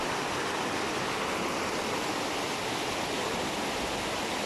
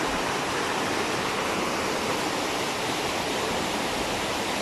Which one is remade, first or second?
second